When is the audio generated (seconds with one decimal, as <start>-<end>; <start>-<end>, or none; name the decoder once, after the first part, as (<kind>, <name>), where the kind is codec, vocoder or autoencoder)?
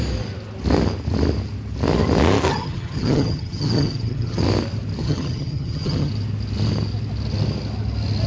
2.5-4.4 (vocoder, HiFi-GAN); 5.0-6.1